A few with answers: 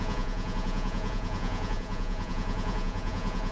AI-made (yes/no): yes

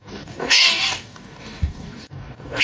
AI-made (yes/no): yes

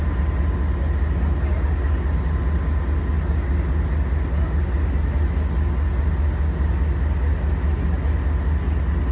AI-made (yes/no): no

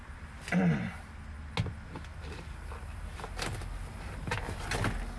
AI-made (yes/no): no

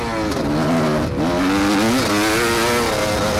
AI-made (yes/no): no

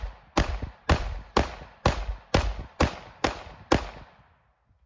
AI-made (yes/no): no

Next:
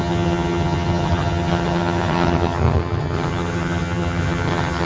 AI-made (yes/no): yes